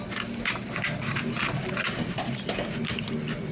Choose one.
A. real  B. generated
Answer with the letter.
A